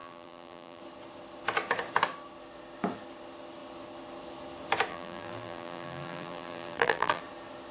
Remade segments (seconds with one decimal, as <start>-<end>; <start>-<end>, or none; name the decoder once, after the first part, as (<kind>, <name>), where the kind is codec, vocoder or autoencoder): 0.0-0.8 (vocoder, BigVGAN v2); 4.9-7.2